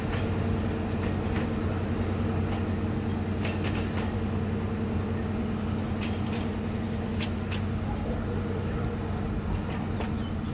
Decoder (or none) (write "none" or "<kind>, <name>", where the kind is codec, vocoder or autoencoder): none